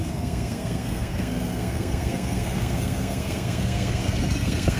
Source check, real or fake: fake